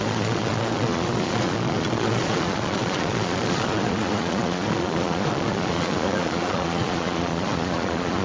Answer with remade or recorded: remade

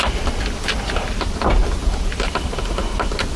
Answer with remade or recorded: recorded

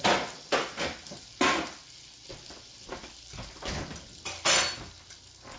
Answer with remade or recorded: recorded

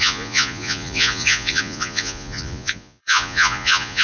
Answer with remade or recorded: remade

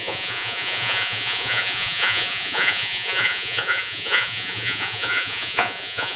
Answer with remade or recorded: remade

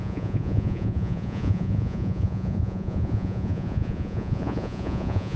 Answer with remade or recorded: remade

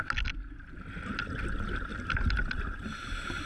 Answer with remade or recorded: recorded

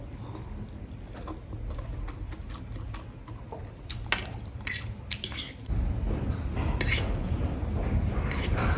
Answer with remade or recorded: recorded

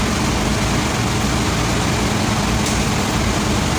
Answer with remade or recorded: recorded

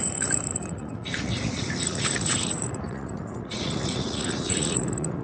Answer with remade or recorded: remade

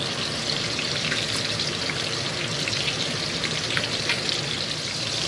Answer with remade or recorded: recorded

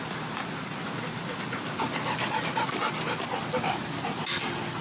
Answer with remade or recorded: recorded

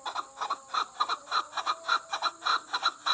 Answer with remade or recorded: recorded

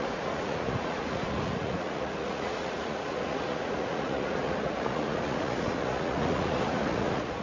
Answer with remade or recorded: remade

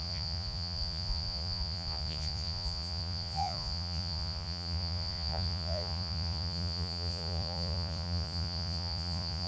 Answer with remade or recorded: remade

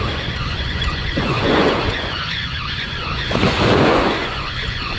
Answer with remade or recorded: remade